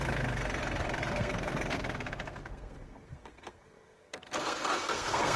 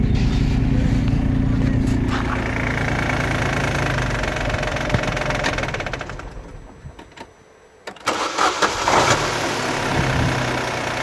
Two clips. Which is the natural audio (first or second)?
second